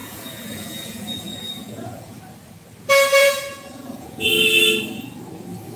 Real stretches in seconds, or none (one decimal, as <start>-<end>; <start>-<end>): 2.2-3.2; 4.3-5.8

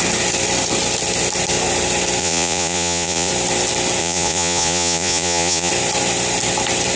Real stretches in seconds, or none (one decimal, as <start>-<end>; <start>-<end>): 0.0-2.2; 3.3-4.0; 5.7-7.0

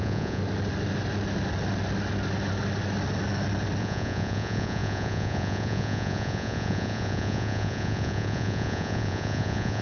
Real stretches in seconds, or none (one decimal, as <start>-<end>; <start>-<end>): 0.4-3.8

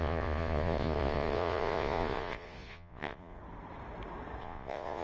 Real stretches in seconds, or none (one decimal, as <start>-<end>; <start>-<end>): 3.4-4.4

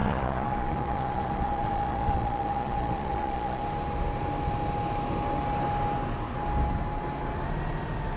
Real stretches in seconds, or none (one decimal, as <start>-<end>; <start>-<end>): 3.6-8.2

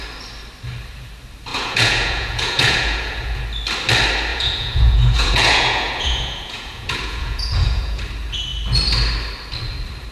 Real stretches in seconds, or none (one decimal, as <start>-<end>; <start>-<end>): 0.0-1.5; 3.4-4.3; 8.0-10.1